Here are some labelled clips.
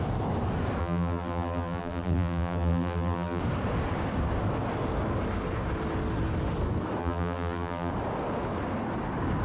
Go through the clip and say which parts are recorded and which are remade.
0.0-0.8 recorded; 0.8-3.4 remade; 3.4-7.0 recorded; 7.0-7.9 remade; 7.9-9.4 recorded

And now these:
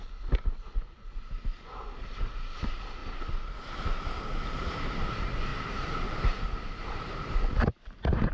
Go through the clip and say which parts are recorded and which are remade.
0.0-5.5 recorded; 5.5-7.3 remade; 7.3-8.3 recorded

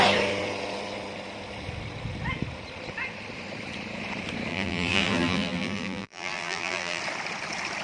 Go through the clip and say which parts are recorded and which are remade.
0.0-4.5 recorded; 4.5-7.0 remade; 7.0-7.8 recorded

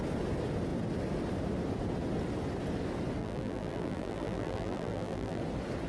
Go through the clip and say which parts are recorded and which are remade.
0.0-3.2 recorded; 3.2-5.4 remade; 5.4-5.9 recorded